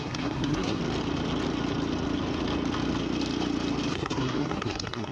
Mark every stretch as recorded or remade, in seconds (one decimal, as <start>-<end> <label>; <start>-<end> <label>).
0.0-0.8 remade; 0.8-3.9 recorded; 3.9-5.1 remade